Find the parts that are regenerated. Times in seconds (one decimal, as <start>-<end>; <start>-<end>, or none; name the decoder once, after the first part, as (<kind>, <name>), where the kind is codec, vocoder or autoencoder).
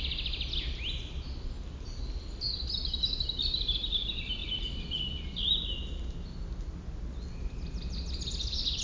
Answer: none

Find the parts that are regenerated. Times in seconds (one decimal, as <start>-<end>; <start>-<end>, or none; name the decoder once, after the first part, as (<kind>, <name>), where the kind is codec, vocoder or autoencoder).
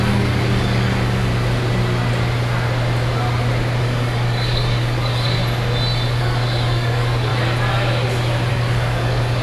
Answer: 0.0-1.3 (codec, DAC); 3.8-5.4; 6.2-7.3; 8.5-9.4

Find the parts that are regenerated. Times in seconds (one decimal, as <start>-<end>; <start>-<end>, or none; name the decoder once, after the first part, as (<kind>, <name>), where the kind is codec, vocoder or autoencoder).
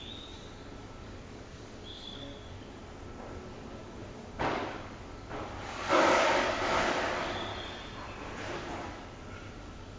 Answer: 0.0-2.8 (codec, DAC); 3.4-7.5; 9.5-10.0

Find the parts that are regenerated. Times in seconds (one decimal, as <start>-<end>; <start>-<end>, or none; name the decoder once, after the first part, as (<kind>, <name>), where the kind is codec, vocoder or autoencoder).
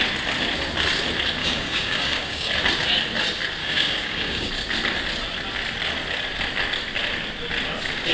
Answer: 1.4-2.5 (codec, DAC); 3.6-4.5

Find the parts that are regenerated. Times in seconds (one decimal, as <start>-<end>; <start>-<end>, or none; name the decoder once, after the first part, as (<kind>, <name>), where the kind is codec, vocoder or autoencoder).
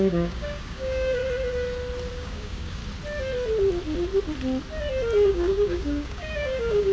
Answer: 0.0-1.2 (codec, DAC); 2.1-2.8; 5.3-6.9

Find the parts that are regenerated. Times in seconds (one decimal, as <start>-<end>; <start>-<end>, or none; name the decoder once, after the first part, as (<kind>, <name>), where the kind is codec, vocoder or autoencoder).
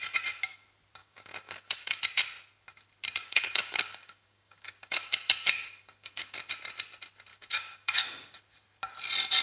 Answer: 1.0-2.0 (codec, DAC); 3.2-6.5; 7.3-8.4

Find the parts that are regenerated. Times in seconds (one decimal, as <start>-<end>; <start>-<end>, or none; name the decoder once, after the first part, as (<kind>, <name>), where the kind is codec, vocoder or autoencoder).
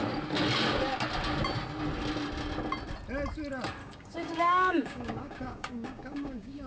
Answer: 3.8-6.7 (codec, DAC)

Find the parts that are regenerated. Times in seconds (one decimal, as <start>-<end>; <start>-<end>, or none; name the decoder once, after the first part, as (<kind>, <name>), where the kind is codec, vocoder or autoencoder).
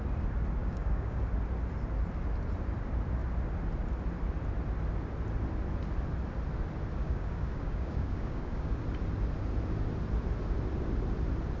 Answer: 0.6-1.2 (codec, DAC); 7.0-8.8